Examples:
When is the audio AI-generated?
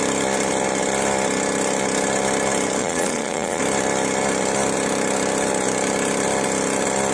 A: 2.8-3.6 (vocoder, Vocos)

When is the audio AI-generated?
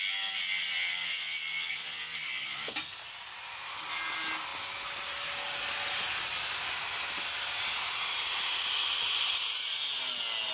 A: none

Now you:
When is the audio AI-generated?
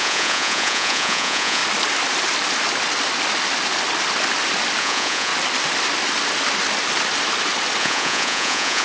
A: 0.0-1.6 (vocoder, Vocos); 4.8-5.3; 7.8-8.8